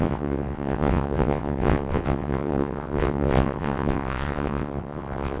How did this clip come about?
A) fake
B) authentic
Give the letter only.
A